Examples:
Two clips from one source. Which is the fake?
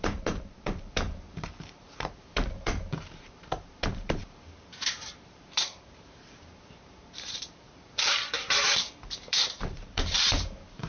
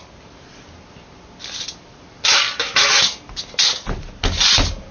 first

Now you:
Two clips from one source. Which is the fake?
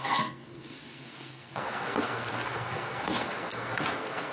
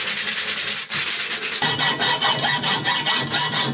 first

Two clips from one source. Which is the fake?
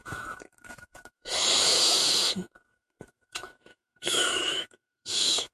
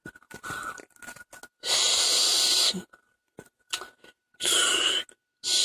first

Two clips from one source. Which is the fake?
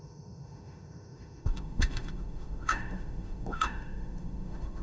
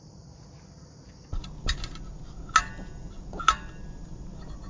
first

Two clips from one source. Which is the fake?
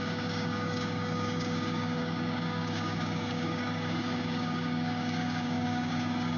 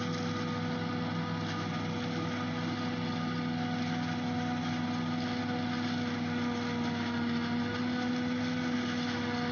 first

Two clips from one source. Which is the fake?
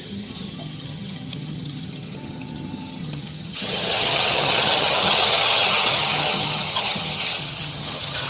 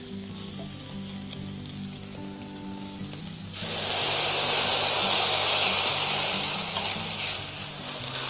first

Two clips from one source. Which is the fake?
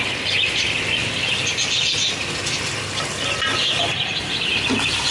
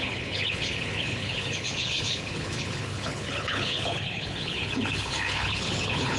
second